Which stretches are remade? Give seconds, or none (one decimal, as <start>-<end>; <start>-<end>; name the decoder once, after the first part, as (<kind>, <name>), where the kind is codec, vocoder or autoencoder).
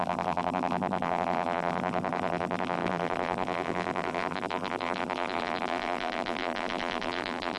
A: 0.0-7.6 (vocoder, BigVGAN v2)